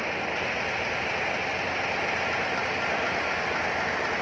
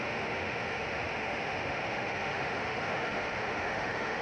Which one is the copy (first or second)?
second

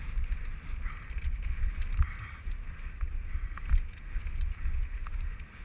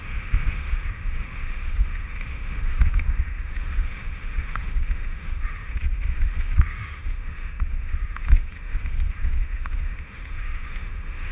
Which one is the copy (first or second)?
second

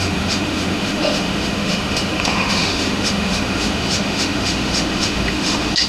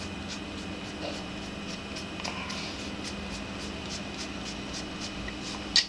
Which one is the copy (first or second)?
first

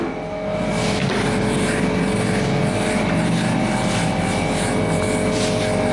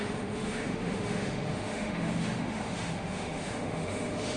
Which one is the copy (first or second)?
second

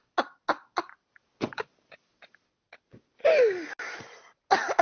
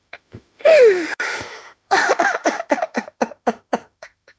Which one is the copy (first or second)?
second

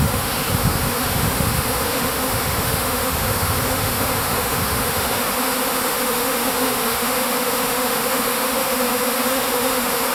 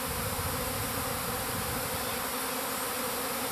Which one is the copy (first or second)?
first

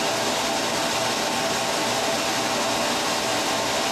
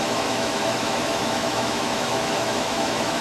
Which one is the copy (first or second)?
second